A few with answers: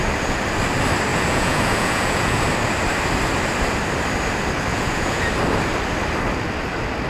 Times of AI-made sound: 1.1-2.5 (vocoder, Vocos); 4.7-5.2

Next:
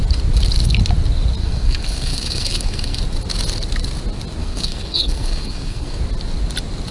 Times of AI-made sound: 1.4-3.0 (codec, SNAC); 4.4-6.0

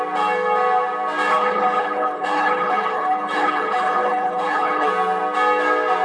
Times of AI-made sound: 1.3-4.9 (codec, HILCodec)

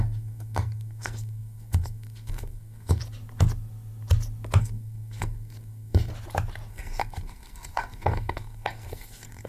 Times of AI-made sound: 0.0-3.0 (codec, SNAC); 4.6-6.1; 6.7-9.5

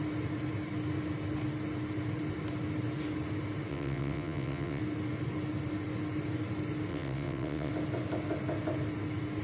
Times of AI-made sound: 3.7-4.8 (vocoder, WaveNeXt); 6.9-7.7

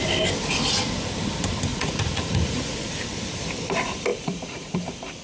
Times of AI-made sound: 1.7-2.8 (vocoder, Vocos); 4.1-4.8

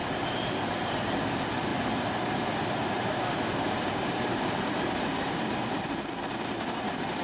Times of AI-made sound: 0.0-1.1 (vocoder, BigVGAN v2); 1.7-6.0

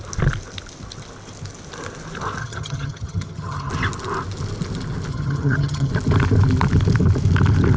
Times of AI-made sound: 2.4-3.7 (vocoder, HiFi-GAN); 5.1-5.9